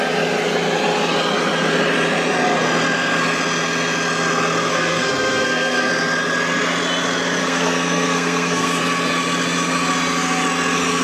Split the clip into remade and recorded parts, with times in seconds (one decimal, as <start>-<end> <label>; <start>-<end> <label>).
0.0-4.7 recorded; 4.7-5.9 remade; 5.9-7.4 recorded; 7.4-8.8 remade; 8.8-11.0 recorded